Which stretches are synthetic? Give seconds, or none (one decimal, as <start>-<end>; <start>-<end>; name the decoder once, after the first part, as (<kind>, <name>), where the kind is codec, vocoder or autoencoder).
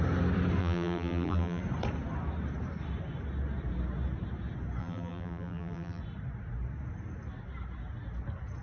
0.6-1.6 (vocoder, BigVGAN v2); 4.8-6.0